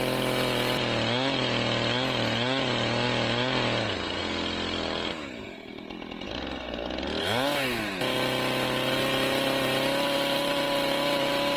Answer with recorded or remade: recorded